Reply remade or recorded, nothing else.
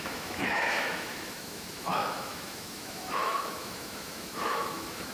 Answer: remade